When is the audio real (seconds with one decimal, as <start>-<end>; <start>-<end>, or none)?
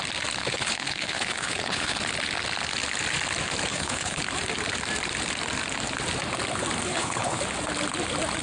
0.0-0.4; 2.0-3.7; 4.2-6.9; 7.4-8.4